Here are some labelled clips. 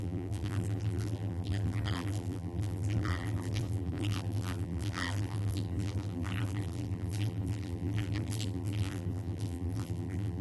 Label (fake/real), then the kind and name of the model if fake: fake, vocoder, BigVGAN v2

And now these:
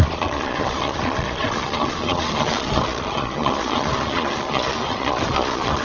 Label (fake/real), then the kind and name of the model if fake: fake, vocoder, Vocos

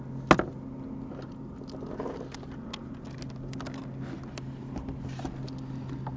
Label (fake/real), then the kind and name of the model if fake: real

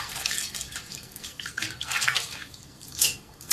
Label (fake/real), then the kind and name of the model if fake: fake, codec, SNAC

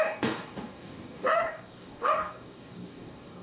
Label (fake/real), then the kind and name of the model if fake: fake, codec, DAC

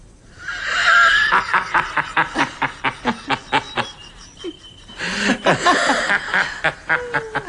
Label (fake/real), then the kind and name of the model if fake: real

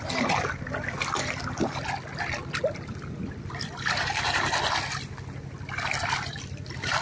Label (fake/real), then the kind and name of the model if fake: real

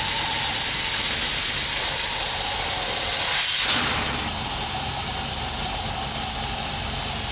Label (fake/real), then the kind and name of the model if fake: real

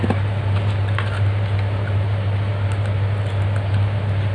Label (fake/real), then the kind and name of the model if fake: real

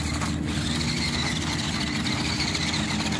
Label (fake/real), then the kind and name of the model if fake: real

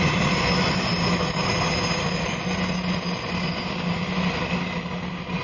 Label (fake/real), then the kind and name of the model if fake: real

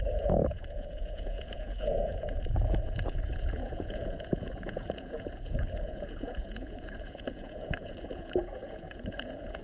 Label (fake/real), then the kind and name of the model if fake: fake, vocoder, Vocos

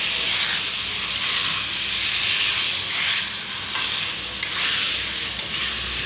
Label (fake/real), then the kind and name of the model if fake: real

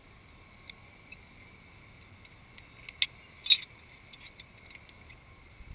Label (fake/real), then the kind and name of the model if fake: real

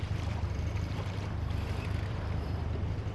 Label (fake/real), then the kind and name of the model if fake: fake, vocoder, BigVGAN v2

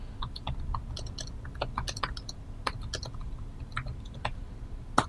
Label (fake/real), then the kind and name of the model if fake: real